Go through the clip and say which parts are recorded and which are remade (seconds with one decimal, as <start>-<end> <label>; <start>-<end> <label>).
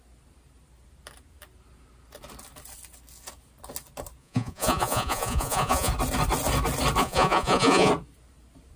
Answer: 0.0-4.2 recorded; 4.2-5.9 remade; 5.9-7.0 recorded; 7.0-7.9 remade; 7.9-8.8 recorded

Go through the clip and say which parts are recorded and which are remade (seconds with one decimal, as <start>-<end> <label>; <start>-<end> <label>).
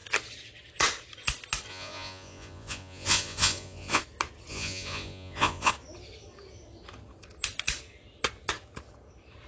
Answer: 0.0-1.7 recorded; 1.7-4.0 remade; 4.0-4.5 recorded; 4.5-5.7 remade; 5.7-9.5 recorded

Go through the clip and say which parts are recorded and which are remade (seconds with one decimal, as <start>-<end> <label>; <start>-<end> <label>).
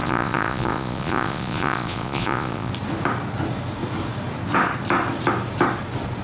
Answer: 0.0-2.7 remade; 2.7-6.2 recorded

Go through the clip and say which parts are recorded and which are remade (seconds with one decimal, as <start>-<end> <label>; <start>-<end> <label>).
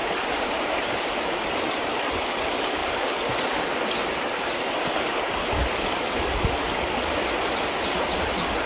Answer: 0.0-2.1 remade; 2.1-8.7 recorded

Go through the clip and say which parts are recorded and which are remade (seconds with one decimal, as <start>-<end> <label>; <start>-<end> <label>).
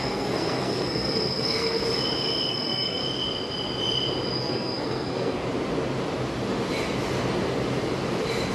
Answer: 0.0-1.8 remade; 1.8-2.5 recorded; 2.5-3.0 remade; 3.0-4.4 recorded; 4.4-5.4 remade; 5.4-8.5 recorded